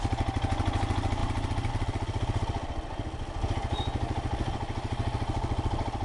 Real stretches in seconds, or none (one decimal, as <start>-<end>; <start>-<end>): 0.0-6.0